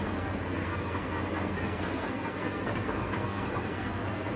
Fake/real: fake